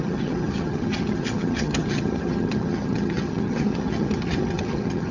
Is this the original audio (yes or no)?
no